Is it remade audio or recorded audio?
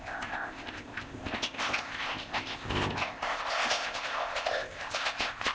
remade